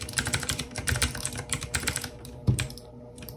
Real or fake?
fake